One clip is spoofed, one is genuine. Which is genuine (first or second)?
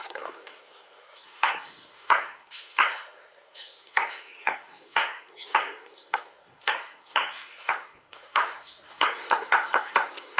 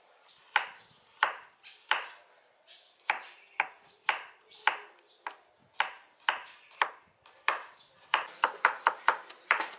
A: second